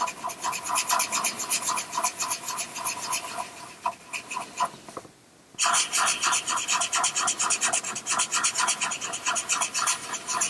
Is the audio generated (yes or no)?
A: no